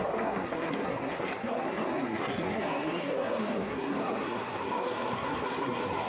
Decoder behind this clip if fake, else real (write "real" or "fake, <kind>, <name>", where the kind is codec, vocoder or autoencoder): fake, codec, SNAC